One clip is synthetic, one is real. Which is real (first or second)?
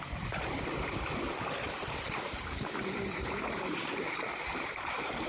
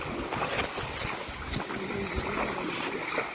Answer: second